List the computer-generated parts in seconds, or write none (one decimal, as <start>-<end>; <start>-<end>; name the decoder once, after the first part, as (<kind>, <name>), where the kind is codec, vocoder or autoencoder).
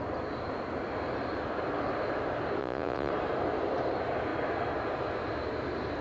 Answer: 2.6-3.1 (vocoder, Vocos)